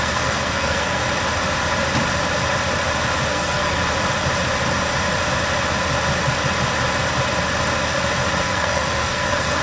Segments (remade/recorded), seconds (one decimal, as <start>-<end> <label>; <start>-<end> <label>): 0.0-1.0 remade; 1.0-3.3 recorded; 3.3-3.8 remade; 3.8-8.4 recorded; 8.4-9.6 remade